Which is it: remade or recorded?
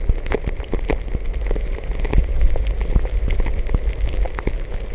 recorded